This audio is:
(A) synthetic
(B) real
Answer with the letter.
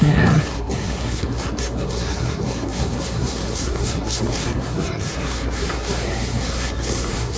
A